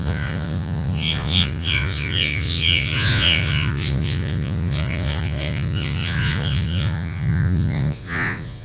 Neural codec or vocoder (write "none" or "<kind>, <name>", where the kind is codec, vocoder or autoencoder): vocoder, Vocos